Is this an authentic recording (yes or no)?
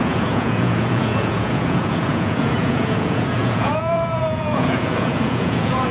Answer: no